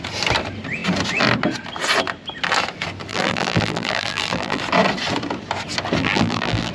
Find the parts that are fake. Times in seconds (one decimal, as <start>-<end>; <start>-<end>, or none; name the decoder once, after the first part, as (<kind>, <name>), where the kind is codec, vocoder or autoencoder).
3.1-4.6 (vocoder, BigVGAN v2); 6.0-6.7